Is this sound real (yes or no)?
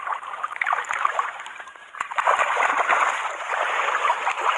no